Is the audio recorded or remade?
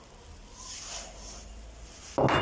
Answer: recorded